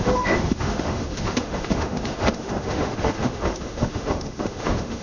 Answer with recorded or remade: remade